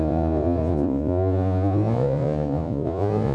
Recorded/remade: remade